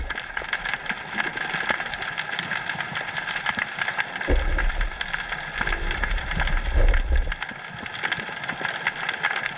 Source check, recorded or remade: recorded